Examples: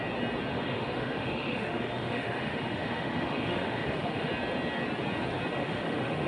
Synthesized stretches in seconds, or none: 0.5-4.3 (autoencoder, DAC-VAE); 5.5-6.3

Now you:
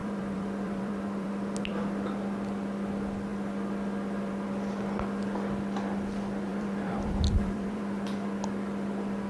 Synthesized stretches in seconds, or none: 0.0-1.8 (vocoder, BigVGAN v2); 6.5-7.8

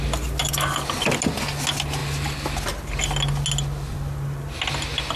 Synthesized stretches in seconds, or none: none

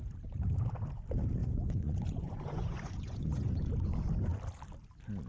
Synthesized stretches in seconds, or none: 1.4-3.7 (vocoder, Vocos)